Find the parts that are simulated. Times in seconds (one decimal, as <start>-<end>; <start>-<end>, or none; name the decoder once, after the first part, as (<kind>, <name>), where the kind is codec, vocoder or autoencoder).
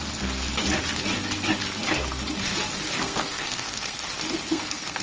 3.0-4.0 (codec, SNAC); 4.5-5.0